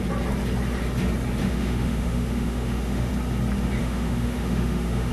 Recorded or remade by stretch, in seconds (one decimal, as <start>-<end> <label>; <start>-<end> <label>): 0.0-1.4 recorded; 1.4-3.1 remade; 3.1-3.8 recorded; 3.8-5.1 remade